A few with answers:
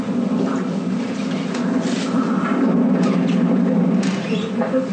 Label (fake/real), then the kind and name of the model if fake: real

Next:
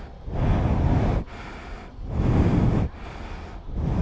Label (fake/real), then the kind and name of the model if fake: real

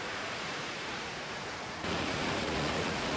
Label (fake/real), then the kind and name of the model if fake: fake, vocoder, Vocos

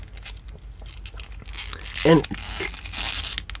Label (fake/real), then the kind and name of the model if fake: real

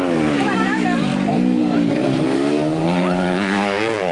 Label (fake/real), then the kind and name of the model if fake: fake, codec, DAC